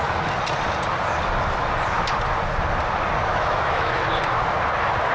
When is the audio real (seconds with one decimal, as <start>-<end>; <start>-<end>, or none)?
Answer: 0.0-3.3; 4.0-5.1

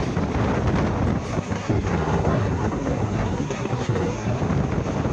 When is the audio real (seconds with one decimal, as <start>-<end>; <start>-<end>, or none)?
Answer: 0.0-1.3; 4.4-5.1